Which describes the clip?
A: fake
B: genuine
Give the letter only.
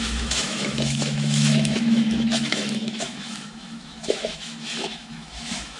A